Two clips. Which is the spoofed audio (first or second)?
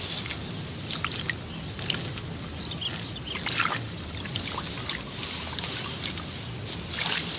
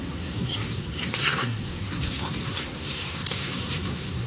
second